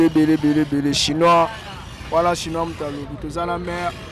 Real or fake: real